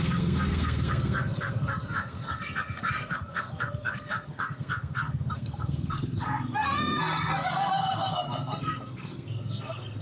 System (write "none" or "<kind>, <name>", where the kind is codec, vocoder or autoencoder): codec, SNAC